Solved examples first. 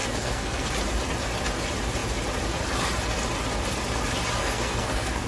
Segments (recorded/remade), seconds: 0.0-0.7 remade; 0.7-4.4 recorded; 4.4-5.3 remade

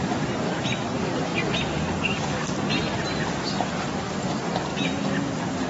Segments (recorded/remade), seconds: 0.0-4.7 recorded; 4.7-5.7 remade

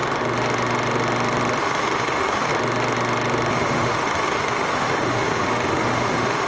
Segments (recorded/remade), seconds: 0.0-1.6 recorded; 1.6-2.5 remade; 2.5-3.5 recorded; 3.5-6.5 remade

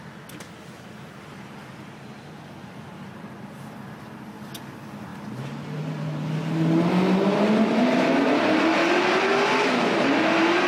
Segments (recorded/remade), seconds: 0.0-10.7 recorded

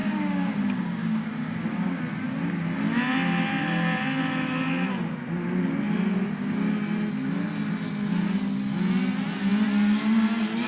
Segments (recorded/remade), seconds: 0.0-2.0 remade; 2.0-10.7 recorded